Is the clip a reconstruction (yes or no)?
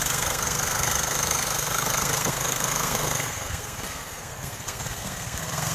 yes